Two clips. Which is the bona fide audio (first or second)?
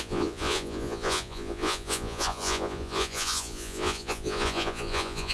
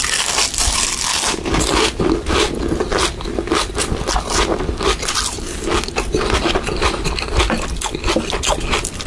second